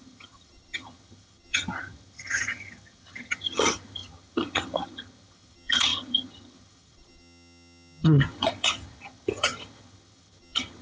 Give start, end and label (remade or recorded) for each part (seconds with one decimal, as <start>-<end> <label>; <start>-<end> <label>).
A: 0.0-10.8 remade